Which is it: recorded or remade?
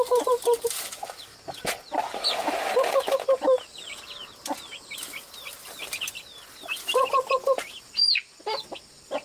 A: recorded